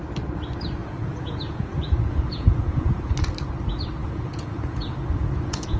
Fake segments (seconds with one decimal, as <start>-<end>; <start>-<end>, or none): 0.8-3.1; 4.0-5.8